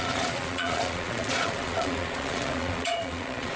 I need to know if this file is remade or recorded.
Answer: remade